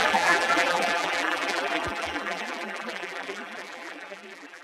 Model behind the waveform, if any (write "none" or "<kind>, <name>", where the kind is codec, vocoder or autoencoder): vocoder, BigVGAN v2